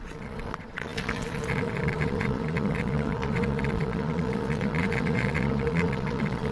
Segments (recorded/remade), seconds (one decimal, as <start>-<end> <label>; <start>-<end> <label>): 0.0-6.5 remade